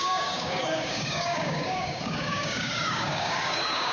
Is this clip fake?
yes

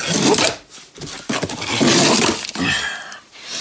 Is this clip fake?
no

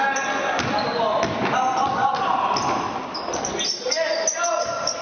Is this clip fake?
no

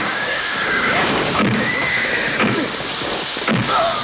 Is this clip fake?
yes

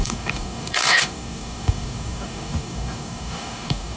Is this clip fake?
yes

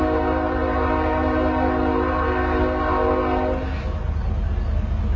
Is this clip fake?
no